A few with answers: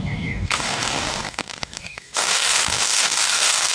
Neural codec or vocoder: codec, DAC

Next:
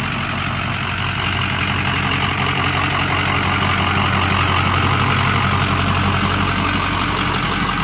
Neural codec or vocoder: none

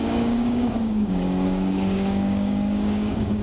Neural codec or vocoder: codec, DAC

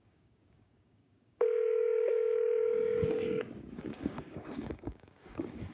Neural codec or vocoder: codec, DAC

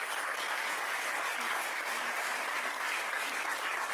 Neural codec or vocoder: codec, DAC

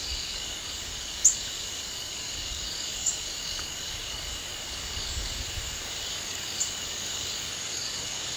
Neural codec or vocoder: codec, DAC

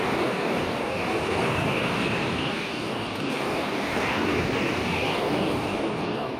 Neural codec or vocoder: codec, DAC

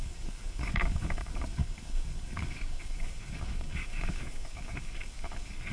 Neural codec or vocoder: codec, DAC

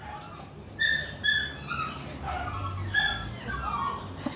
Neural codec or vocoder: none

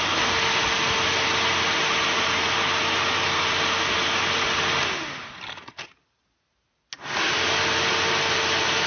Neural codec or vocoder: none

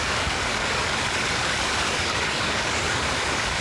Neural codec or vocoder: codec, DAC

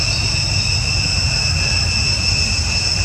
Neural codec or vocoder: none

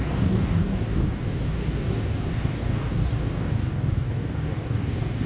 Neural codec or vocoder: codec, DAC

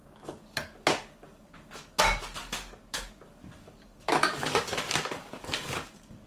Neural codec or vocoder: codec, DAC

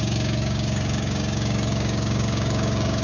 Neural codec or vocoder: codec, DAC